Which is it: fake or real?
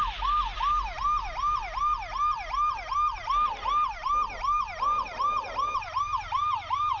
real